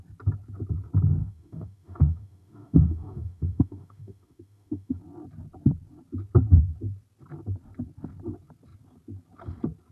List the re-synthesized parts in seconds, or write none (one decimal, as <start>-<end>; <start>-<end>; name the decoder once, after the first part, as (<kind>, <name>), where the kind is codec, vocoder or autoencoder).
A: 1.2-5.0 (autoencoder, DAC-VAE)